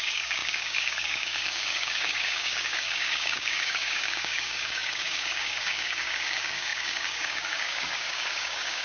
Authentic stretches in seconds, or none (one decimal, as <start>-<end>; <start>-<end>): none